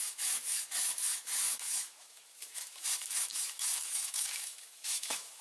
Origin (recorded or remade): remade